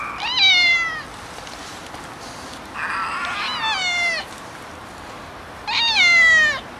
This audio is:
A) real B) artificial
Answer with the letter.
A